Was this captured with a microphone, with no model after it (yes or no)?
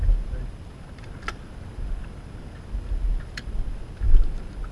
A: yes